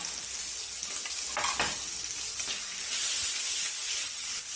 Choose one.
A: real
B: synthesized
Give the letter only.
A